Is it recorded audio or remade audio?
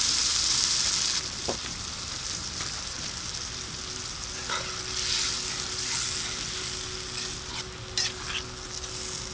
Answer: recorded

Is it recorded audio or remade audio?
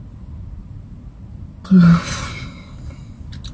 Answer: recorded